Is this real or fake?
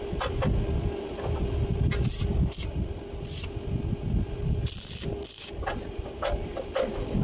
real